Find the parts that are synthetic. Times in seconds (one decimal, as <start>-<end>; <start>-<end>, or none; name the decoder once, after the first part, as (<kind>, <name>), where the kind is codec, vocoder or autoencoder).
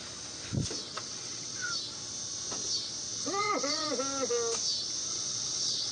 0.9-1.7 (vocoder, WaveNeXt); 3.1-3.9; 5.1-5.9